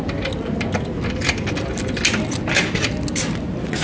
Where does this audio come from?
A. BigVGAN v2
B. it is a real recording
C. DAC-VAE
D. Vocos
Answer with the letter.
B